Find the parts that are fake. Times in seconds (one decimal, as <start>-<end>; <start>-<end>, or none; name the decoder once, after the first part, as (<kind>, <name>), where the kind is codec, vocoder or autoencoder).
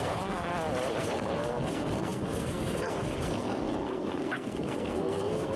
0.0-0.5 (codec, SNAC); 1.0-5.6